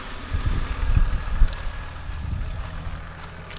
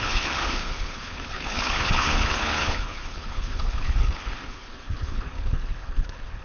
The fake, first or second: second